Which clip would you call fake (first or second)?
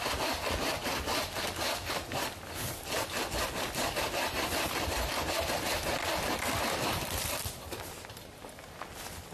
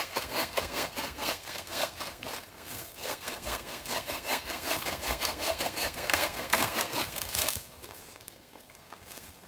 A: second